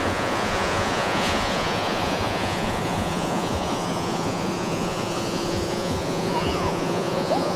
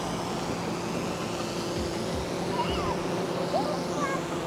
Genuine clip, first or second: second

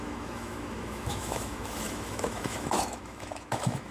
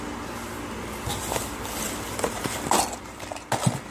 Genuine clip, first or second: second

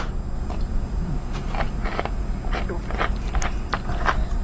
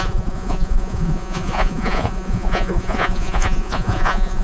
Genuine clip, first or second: first